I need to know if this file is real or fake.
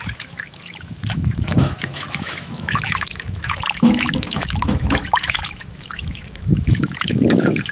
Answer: fake